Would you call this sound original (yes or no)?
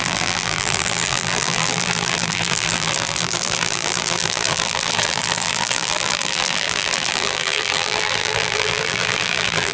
no